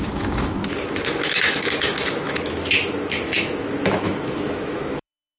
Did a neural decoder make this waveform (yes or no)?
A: yes